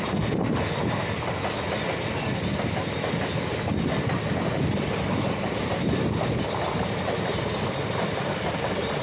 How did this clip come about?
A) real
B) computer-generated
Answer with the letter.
A